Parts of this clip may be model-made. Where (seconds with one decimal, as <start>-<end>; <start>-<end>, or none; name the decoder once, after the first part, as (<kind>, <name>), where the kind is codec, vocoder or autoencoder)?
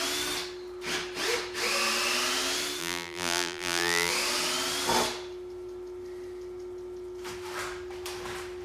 2.8-4.1 (vocoder, BigVGAN v2)